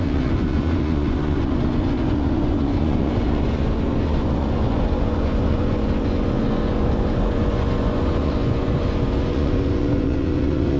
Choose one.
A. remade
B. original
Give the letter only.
A